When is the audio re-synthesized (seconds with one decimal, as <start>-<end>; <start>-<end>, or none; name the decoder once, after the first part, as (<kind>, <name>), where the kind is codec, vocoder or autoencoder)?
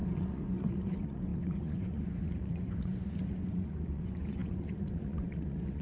0.0-5.8 (vocoder, Vocos)